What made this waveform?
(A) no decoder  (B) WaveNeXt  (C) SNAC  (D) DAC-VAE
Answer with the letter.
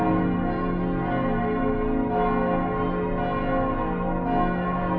A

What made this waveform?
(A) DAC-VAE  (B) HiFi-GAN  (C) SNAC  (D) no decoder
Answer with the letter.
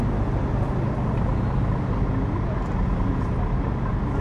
D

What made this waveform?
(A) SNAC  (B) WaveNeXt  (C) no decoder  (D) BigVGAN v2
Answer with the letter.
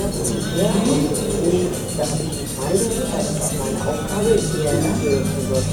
C